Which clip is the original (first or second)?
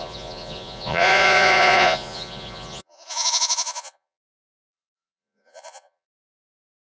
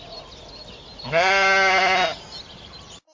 second